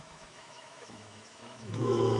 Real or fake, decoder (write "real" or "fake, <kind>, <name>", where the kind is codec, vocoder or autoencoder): fake, autoencoder, DAC-VAE